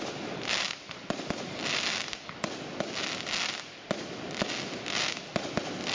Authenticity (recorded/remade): recorded